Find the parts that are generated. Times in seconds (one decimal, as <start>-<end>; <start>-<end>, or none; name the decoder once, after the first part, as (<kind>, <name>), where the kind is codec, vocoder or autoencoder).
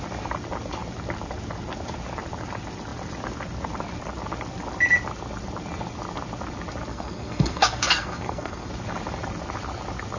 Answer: 6.9-8.7 (codec, SNAC)